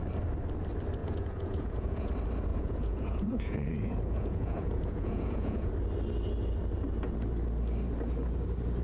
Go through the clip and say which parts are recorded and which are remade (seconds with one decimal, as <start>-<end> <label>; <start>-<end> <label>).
0.0-1.0 recorded; 1.0-2.1 remade; 2.1-2.5 recorded; 2.5-5.7 remade; 5.7-8.8 recorded